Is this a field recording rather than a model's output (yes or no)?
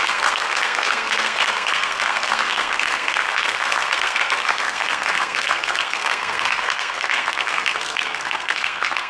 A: no